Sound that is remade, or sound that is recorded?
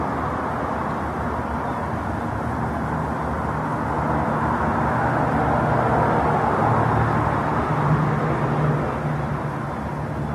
recorded